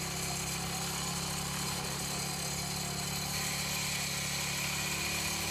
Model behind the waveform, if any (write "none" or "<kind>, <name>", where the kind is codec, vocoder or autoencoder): none